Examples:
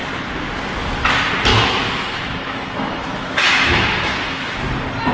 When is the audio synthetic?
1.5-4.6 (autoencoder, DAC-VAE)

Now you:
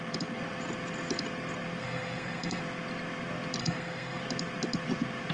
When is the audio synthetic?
1.8-2.6 (codec, SNAC); 3.6-4.2

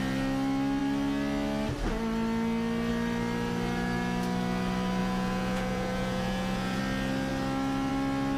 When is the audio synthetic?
5.0-6.8 (vocoder, Vocos)